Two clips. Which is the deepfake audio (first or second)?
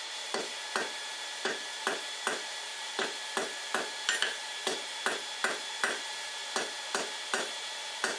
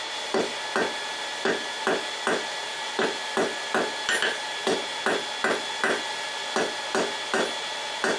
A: first